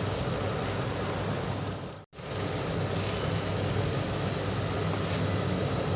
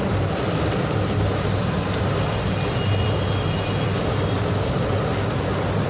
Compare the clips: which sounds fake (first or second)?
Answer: second